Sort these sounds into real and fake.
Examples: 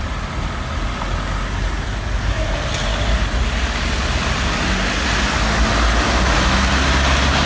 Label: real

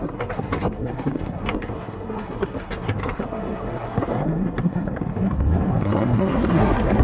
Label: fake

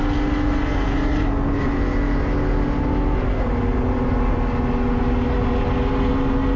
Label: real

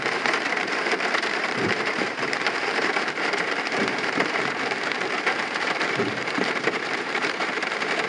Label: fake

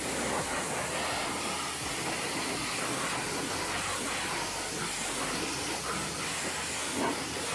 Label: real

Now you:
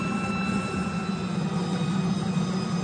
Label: real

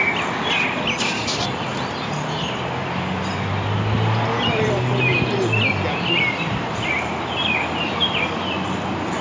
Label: real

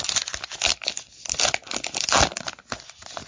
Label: real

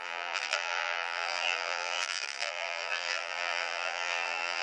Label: fake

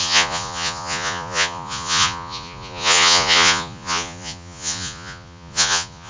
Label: fake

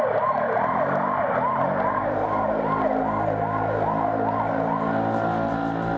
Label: real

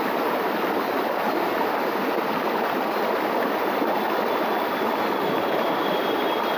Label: real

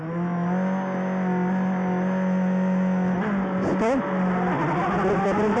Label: real